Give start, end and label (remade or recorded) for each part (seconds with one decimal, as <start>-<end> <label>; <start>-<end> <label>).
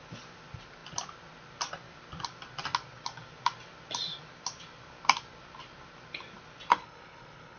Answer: 0.0-6.8 recorded; 6.8-7.6 remade